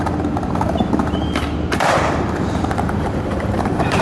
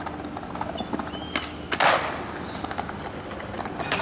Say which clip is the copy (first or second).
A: first